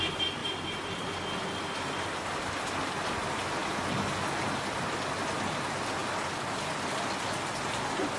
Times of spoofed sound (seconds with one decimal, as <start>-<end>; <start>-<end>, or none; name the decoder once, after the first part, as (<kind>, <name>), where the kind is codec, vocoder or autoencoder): 0.4-1.1 (vocoder, BigVGAN v2)